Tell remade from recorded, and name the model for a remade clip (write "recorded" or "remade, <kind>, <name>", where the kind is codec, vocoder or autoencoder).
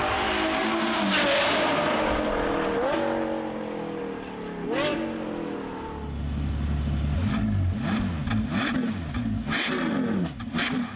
recorded